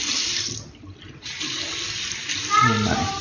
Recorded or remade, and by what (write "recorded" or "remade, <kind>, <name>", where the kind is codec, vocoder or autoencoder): recorded